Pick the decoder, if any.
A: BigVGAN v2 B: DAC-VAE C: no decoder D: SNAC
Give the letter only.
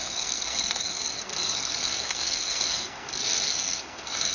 D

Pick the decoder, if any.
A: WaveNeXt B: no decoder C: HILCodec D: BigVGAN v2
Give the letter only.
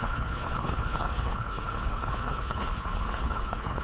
C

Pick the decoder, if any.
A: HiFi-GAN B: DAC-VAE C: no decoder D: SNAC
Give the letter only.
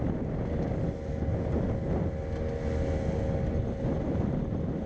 C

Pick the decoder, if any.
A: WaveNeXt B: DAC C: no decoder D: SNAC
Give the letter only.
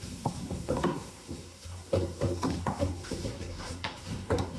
D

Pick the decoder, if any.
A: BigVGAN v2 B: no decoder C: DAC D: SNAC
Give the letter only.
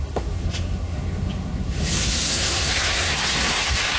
D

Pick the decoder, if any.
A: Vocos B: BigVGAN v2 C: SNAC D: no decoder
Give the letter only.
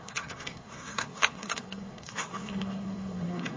C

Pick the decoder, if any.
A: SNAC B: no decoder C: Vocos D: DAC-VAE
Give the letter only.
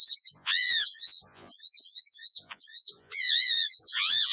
C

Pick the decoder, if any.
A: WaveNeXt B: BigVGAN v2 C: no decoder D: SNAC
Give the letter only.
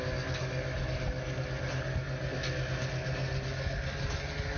C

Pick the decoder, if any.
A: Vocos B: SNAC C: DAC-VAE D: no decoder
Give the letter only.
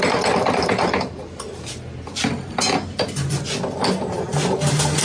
D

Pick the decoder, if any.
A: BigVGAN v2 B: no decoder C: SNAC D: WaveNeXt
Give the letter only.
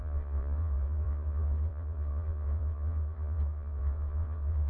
D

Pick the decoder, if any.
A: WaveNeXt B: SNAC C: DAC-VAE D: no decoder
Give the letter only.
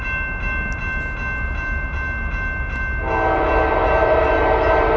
D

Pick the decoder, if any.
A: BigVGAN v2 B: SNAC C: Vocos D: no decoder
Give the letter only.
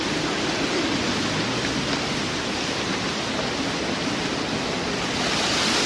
D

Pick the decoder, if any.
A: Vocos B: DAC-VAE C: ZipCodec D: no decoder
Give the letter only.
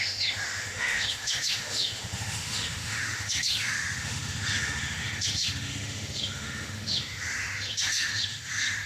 B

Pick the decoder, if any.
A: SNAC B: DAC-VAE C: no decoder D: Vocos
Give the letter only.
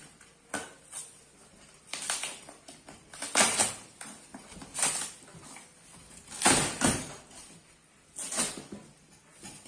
C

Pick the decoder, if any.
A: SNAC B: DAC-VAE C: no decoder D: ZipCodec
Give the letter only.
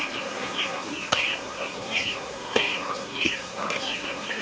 A